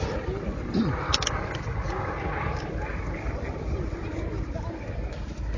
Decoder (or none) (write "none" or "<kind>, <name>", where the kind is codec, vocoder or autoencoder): none